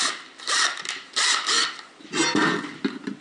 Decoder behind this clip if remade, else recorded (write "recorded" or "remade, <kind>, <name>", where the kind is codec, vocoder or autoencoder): recorded